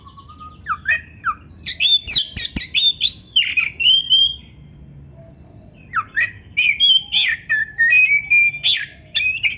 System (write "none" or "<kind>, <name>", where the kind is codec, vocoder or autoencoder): none